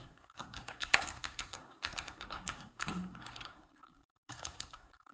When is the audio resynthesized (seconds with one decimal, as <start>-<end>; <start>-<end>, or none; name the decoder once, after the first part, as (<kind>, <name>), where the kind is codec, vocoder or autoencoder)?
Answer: 0.0-5.1 (codec, SNAC)